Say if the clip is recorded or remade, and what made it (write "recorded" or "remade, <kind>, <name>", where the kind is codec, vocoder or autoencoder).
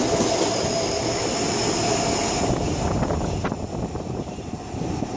recorded